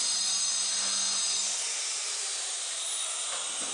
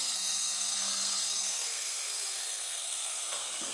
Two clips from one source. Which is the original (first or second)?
first